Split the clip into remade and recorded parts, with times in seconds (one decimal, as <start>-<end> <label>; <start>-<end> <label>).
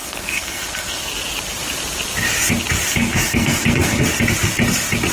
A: 0.0-1.1 remade; 1.1-3.0 recorded; 3.0-4.0 remade; 4.0-5.1 recorded